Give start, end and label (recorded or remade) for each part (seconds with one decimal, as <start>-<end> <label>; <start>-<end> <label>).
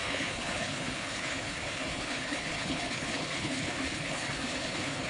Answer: 0.0-5.1 remade